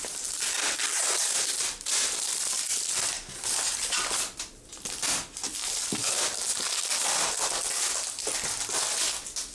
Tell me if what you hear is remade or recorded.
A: recorded